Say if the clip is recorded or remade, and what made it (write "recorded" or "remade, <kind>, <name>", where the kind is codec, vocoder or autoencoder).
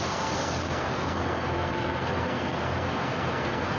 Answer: remade, codec, SNAC